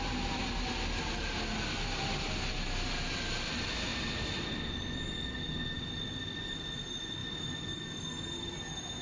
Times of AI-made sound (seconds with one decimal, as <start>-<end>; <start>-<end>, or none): none